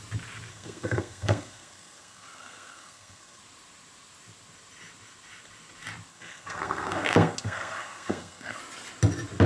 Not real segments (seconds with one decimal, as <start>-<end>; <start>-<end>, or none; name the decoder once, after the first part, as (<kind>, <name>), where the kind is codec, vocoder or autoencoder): 0.5-3.4 (codec, SNAC); 6.1-8.6